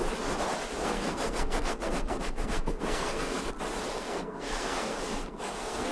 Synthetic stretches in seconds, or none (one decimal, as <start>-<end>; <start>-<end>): 0.8-3.5; 3.9-5.9